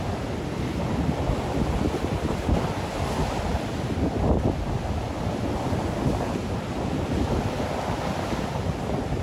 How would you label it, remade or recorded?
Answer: recorded